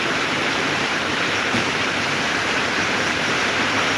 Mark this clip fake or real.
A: fake